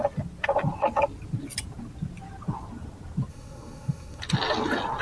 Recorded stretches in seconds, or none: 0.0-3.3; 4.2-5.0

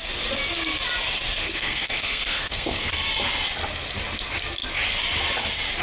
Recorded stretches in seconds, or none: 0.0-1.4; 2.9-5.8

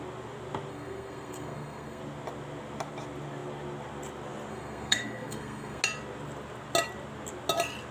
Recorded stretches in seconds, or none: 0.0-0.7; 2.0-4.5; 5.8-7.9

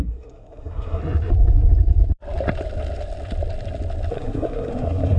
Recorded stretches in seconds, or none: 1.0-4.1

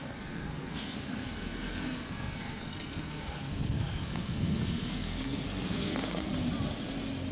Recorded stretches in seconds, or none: 6.3-7.3

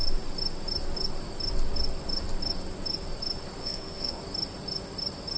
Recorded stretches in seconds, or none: 0.0-3.6; 4.2-5.4

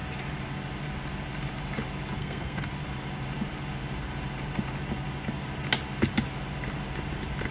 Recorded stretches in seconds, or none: 0.0-2.2; 2.7-7.5